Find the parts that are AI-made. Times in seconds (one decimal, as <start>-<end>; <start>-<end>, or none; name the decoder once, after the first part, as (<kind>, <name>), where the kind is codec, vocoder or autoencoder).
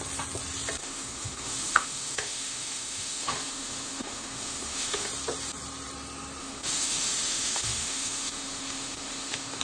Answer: 0.8-5.1 (autoencoder, DAC-VAE); 6.4-9.6